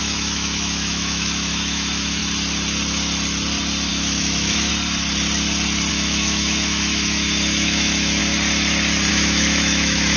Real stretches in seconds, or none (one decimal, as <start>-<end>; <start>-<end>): 2.2-3.9; 4.7-5.9; 8.2-9.1